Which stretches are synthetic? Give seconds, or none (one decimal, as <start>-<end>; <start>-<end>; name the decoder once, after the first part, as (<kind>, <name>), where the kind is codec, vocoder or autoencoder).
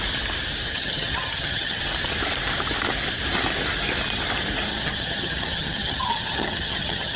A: 0.7-1.8 (vocoder, HiFi-GAN); 4.7-7.2